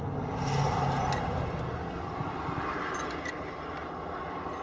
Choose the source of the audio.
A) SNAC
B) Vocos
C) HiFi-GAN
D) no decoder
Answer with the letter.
D